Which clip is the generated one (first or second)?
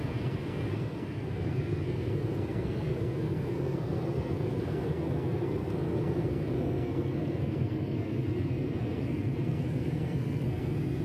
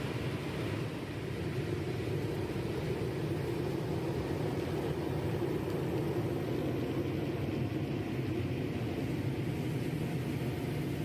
first